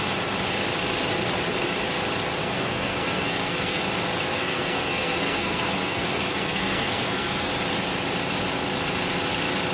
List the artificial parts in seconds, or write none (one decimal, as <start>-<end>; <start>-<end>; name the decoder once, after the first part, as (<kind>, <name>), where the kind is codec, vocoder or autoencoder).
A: 2.4-3.8 (codec, SNAC); 4.3-7.5